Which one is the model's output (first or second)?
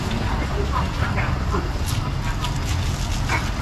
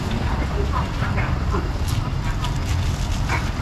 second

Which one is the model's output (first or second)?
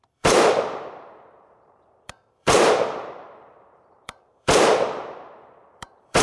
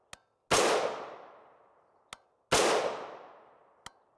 first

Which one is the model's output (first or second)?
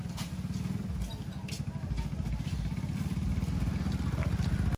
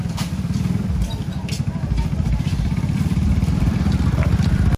second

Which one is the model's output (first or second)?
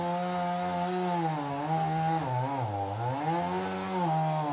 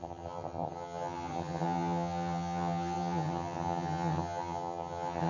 second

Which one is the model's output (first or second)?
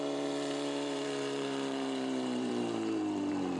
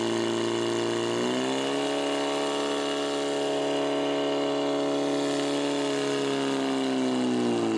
first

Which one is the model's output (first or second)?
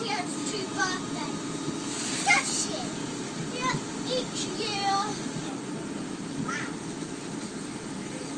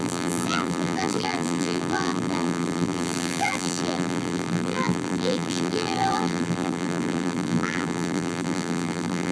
second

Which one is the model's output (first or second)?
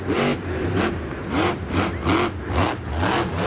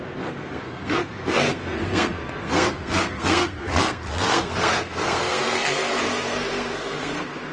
second